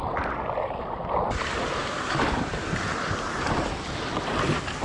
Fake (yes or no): no